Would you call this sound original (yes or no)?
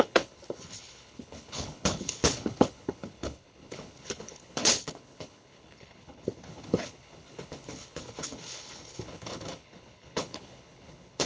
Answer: no